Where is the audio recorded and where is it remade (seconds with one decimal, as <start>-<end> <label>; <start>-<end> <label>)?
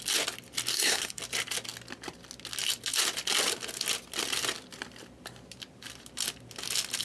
0.0-0.7 recorded; 0.7-1.2 remade; 1.2-7.0 recorded